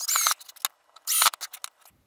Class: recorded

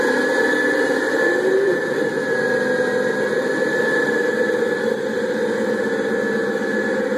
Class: recorded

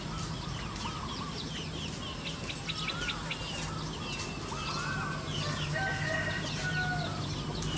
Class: recorded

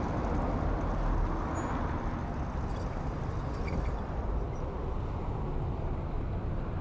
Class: recorded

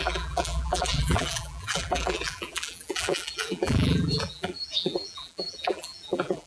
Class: remade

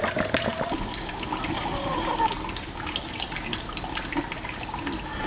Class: recorded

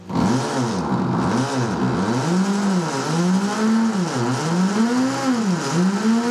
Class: recorded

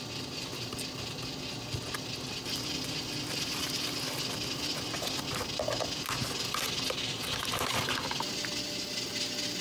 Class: recorded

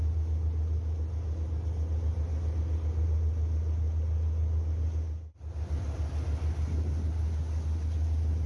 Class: recorded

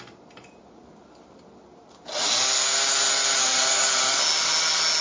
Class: recorded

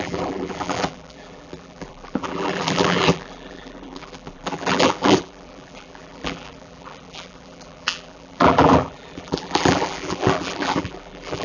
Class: remade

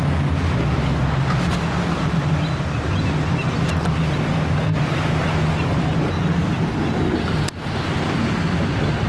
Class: recorded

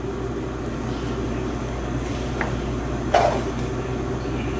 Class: recorded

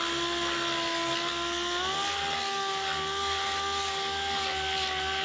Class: recorded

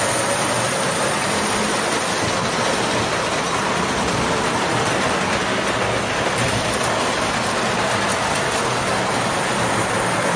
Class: recorded